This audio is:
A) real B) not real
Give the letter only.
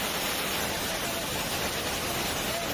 A